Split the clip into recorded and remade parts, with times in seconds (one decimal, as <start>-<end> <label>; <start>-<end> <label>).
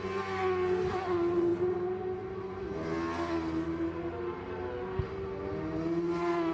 0.0-6.5 recorded